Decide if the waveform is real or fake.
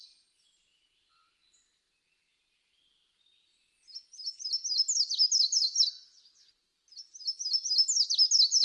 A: real